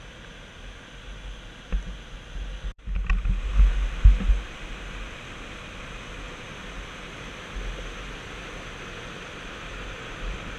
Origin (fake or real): real